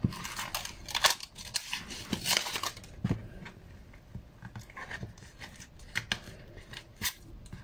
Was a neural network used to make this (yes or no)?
no